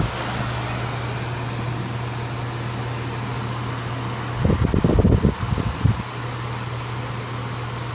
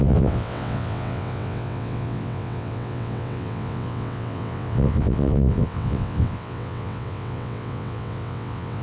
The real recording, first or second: first